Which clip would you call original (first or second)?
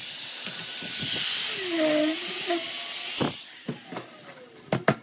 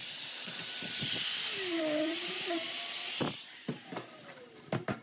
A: first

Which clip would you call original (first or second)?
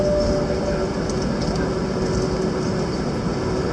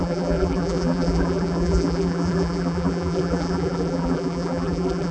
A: first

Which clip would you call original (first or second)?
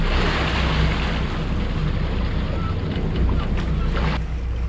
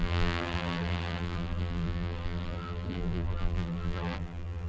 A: first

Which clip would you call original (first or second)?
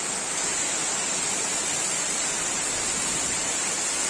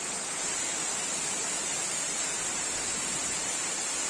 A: first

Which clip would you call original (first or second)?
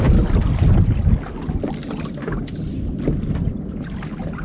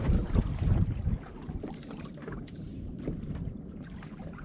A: first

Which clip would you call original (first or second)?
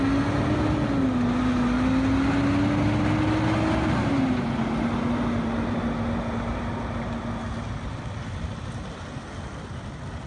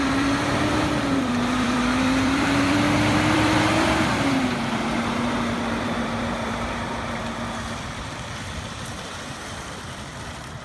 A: first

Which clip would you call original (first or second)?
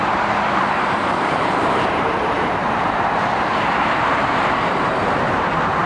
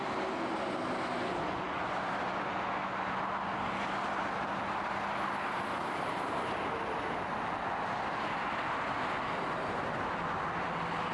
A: second